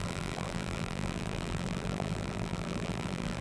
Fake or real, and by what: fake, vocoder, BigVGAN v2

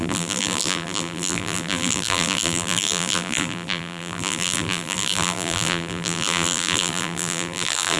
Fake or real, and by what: fake, vocoder, BigVGAN v2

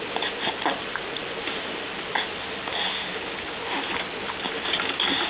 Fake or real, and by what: real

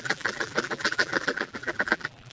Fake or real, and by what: fake, vocoder, BigVGAN v2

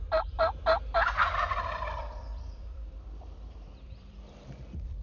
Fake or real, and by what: fake, vocoder, BigVGAN v2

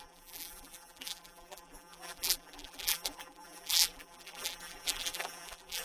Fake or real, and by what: fake, vocoder, BigVGAN v2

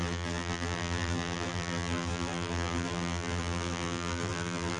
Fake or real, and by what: fake, vocoder, BigVGAN v2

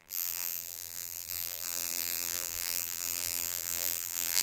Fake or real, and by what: fake, vocoder, BigVGAN v2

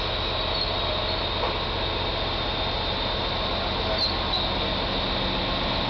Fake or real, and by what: real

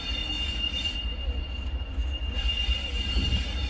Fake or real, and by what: real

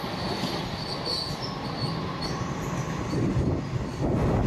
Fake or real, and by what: real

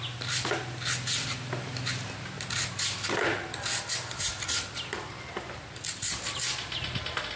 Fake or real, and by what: real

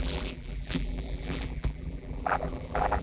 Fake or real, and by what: fake, vocoder, BigVGAN v2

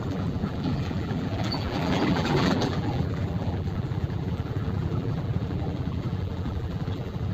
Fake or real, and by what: fake, vocoder, BigVGAN v2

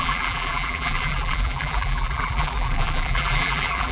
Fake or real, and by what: fake, vocoder, BigVGAN v2